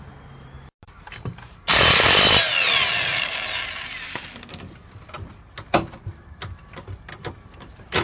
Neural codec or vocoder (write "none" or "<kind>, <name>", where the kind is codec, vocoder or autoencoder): none